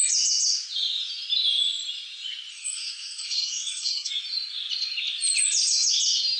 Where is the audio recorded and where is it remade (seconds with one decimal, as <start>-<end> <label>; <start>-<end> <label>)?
0.0-2.5 recorded; 2.5-4.1 remade; 4.1-6.4 recorded